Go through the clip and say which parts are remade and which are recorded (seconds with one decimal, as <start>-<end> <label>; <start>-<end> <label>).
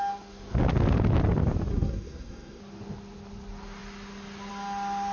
0.0-1.7 recorded; 1.7-2.6 remade; 2.6-5.1 recorded